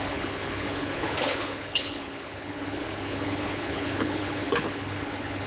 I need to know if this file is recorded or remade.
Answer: remade